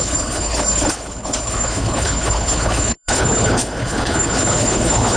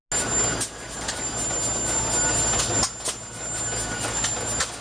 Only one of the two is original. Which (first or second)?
second